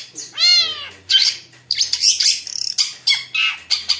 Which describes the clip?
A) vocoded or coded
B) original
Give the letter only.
B